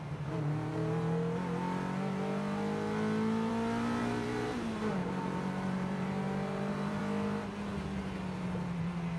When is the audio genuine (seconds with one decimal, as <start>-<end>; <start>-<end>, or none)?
0.0-4.0; 4.6-5.0; 7.0-9.2